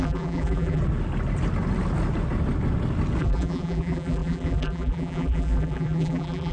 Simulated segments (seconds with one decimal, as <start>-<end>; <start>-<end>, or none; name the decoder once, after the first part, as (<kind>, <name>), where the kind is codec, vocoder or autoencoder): 0.0-0.8 (vocoder, BigVGAN v2); 3.2-6.5